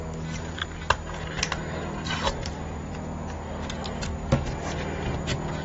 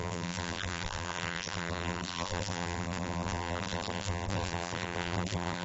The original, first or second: first